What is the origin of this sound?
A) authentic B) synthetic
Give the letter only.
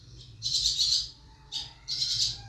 B